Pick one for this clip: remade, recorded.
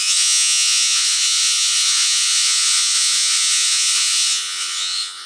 remade